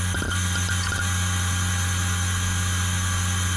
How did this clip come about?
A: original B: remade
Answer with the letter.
A